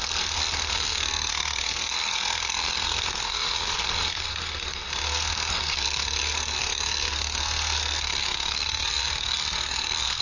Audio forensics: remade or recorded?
remade